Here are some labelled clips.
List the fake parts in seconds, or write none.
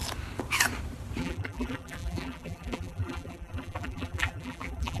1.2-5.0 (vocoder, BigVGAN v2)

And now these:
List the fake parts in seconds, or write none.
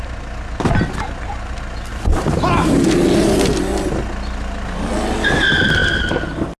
1.9-2.9 (vocoder, BigVGAN v2)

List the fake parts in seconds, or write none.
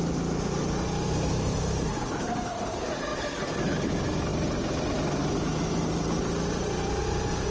none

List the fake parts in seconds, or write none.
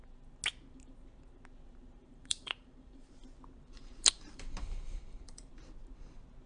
2.0-3.2 (vocoder, BigVGAN v2); 3.6-5.5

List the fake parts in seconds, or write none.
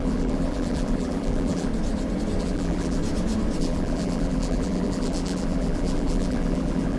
0.0-1.7 (vocoder, BigVGAN v2); 2.4-3.0; 3.6-7.0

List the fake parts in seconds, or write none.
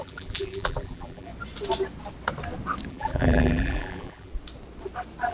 0.0-1.3 (vocoder, BigVGAN v2); 2.9-4.3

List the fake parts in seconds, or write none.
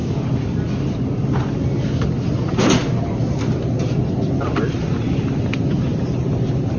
5.9-6.8 (vocoder, BigVGAN v2)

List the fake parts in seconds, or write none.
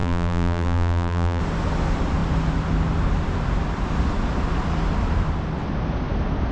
0.0-1.4 (vocoder, BigVGAN v2)